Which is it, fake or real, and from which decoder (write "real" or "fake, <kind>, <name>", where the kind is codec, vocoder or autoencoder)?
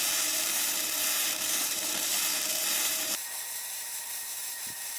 fake, vocoder, BigVGAN v2